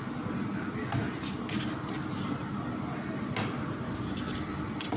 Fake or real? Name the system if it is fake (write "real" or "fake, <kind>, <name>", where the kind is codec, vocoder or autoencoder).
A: real